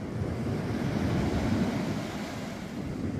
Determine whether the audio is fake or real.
real